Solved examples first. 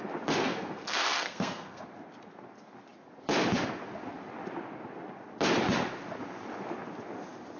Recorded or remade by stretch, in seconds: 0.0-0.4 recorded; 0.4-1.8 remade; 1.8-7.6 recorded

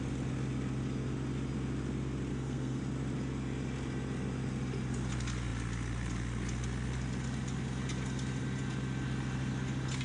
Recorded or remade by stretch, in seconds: 0.0-2.3 recorded; 2.3-2.8 remade; 2.8-10.0 recorded